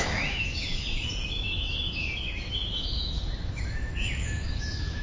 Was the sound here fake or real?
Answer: fake